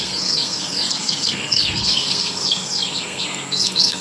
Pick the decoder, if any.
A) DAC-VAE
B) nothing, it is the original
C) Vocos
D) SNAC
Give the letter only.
D